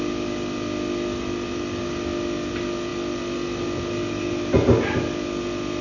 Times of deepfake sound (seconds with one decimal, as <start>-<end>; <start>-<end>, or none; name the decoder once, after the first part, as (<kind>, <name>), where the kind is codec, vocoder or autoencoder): none